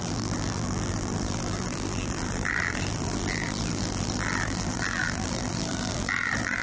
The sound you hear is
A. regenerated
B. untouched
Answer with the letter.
A